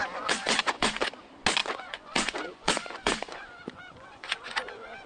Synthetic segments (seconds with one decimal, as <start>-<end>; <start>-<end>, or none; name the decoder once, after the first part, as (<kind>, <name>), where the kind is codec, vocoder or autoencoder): 0.0-1.1 (vocoder, Vocos); 1.6-5.1